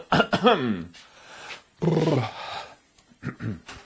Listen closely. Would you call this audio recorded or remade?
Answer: recorded